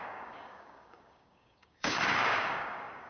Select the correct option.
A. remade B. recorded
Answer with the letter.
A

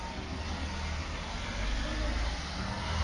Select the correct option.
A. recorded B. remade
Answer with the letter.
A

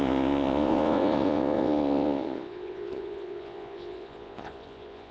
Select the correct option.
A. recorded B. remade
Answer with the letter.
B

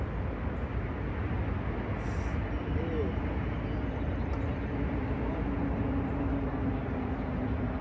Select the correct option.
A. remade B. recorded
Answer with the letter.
B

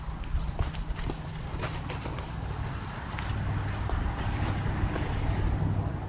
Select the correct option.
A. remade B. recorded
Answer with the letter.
B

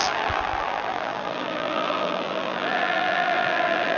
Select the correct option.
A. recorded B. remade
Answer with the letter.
B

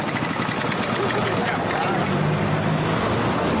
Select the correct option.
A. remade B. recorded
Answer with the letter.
B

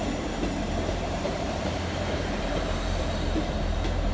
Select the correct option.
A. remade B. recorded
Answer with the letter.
A